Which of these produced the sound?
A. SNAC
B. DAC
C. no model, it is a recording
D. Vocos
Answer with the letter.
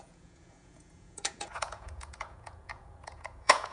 D